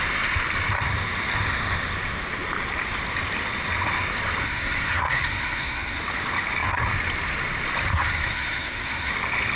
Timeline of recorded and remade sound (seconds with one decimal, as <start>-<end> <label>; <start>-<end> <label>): 0.0-4.4 recorded; 4.4-6.0 remade; 6.0-7.9 recorded; 7.9-9.1 remade; 9.1-9.6 recorded